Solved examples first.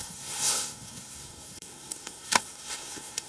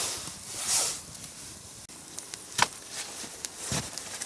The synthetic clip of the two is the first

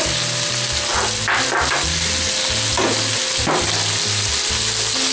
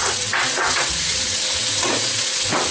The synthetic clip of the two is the second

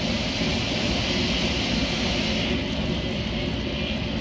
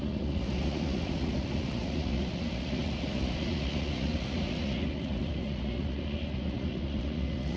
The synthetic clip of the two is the second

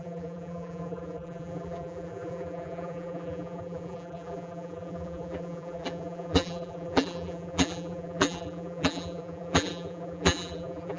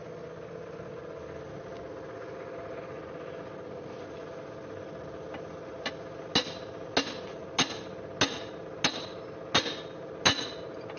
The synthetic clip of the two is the first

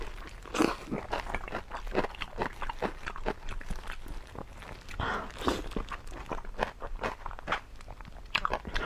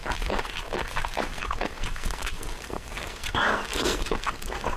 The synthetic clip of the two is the second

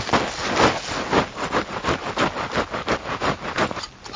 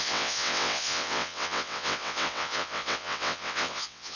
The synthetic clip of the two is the second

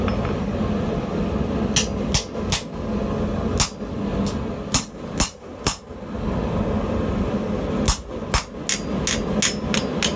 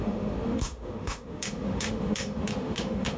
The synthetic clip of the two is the second